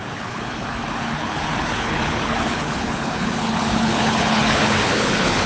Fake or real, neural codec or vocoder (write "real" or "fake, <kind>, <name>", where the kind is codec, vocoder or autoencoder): fake, codec, HILCodec